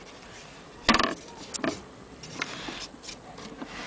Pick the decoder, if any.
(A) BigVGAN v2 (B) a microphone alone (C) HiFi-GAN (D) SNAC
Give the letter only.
B